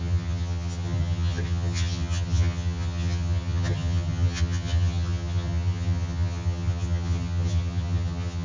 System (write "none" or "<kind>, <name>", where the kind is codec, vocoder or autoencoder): vocoder, HiFi-GAN